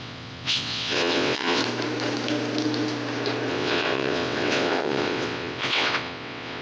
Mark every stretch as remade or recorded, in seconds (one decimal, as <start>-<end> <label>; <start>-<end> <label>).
0.0-1.6 remade; 1.6-3.5 recorded; 3.5-6.6 remade